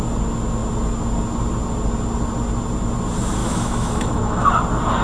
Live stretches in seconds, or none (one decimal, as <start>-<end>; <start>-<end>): 0.0-3.4; 4.5-5.0